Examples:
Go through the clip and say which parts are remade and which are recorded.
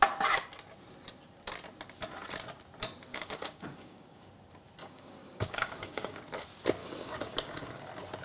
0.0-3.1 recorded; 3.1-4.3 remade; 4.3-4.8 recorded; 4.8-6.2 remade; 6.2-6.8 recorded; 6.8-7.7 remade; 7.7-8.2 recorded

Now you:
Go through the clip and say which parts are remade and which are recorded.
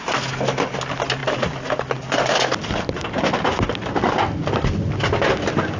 0.0-5.8 recorded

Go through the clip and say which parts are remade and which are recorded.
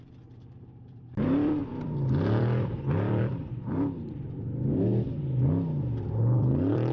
0.0-4.9 remade; 4.9-5.8 recorded; 5.8-6.9 remade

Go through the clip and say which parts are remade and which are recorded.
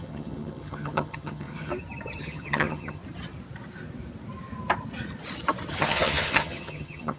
0.0-1.7 remade; 1.7-2.2 recorded; 2.2-3.0 remade; 3.0-5.7 recorded; 5.7-7.2 remade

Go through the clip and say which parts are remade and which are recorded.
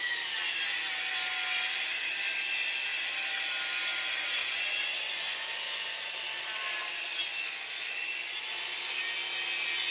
0.0-4.4 recorded; 4.4-6.2 remade; 6.2-9.9 recorded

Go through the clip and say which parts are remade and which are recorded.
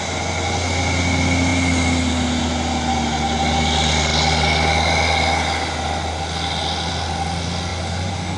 0.0-7.7 recorded; 7.7-8.4 remade